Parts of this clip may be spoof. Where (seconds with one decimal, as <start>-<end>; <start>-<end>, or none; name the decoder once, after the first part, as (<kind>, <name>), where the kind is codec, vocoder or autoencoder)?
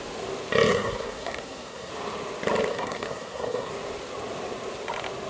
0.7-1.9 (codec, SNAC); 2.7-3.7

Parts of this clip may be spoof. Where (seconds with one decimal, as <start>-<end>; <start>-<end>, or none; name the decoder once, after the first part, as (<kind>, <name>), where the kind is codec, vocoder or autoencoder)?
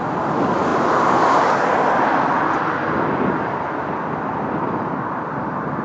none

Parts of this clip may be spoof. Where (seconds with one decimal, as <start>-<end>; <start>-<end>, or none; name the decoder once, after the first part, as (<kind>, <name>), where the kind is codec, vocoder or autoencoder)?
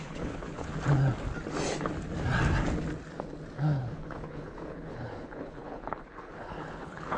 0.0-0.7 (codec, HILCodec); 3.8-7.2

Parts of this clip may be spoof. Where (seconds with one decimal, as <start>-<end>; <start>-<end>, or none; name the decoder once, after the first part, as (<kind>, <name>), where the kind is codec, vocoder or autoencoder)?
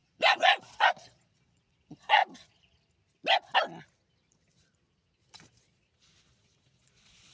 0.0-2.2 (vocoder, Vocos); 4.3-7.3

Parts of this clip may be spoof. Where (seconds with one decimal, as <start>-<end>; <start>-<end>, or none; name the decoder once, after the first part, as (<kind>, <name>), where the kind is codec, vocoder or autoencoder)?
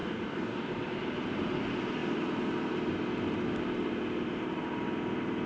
0.0-0.7 (codec, DAC)